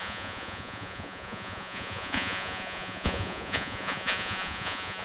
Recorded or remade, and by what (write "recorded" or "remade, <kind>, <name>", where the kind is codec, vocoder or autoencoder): remade, vocoder, Vocos